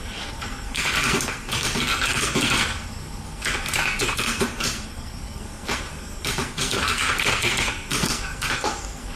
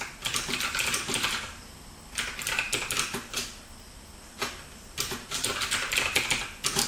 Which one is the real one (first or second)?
second